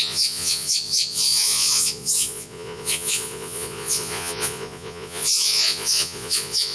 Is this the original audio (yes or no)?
no